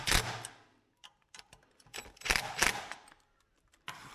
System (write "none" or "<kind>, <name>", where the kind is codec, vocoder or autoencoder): none